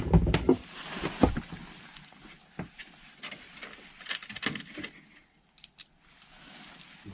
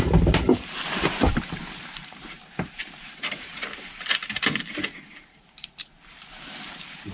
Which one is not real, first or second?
second